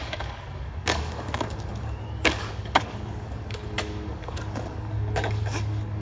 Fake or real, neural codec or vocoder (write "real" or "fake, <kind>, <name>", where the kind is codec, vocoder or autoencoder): fake, codec, DAC